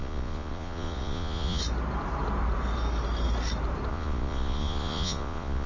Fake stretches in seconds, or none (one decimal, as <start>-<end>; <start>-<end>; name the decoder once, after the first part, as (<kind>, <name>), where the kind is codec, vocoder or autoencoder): 0.0-1.6 (vocoder, Vocos); 3.9-5.7